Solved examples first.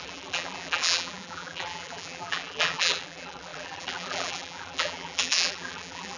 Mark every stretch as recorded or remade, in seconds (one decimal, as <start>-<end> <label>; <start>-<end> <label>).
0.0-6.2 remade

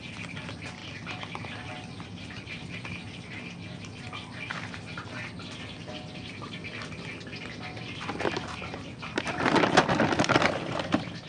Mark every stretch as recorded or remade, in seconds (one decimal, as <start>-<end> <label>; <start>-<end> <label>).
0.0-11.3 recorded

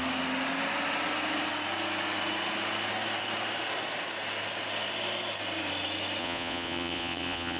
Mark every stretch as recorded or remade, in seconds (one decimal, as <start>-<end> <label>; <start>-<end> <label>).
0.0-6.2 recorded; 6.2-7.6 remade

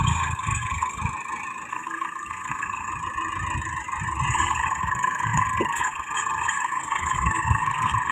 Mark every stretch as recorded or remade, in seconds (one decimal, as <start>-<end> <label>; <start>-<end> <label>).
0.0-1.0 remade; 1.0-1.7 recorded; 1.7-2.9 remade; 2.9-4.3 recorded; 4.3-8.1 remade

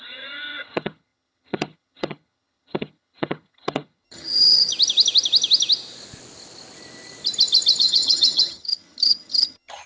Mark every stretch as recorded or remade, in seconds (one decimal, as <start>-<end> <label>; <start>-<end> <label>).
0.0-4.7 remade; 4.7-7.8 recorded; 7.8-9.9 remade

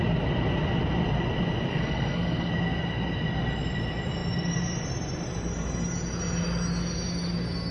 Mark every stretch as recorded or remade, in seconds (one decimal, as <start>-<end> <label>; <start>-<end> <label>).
0.0-1.7 recorded; 1.7-2.5 remade; 2.5-7.7 recorded

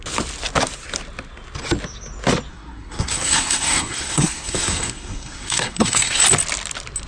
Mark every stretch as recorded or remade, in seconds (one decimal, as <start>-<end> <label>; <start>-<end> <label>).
0.0-2.5 recorded; 2.5-6.2 remade; 6.2-7.1 recorded